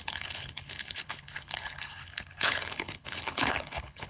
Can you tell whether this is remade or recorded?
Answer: remade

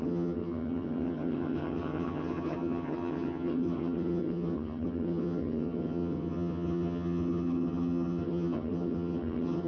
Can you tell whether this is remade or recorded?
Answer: remade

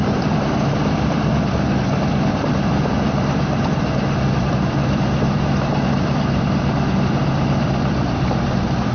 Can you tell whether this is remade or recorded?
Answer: remade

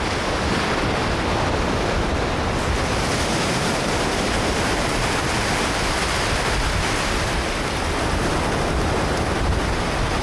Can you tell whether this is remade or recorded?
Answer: recorded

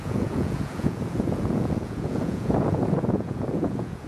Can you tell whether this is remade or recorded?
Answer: remade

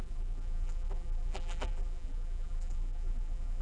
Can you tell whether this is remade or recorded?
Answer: remade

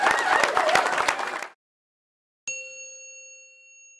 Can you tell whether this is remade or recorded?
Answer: recorded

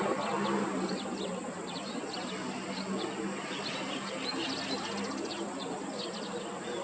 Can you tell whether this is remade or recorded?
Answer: recorded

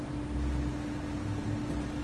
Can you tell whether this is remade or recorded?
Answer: recorded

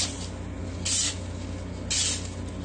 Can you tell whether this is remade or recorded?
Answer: recorded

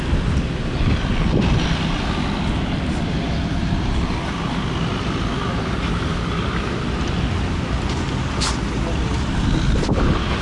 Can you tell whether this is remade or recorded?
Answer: recorded